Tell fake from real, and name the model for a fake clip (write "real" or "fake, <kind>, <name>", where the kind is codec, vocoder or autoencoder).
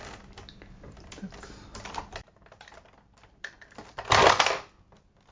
real